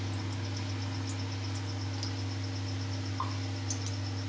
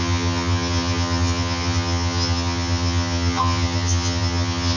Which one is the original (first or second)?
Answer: first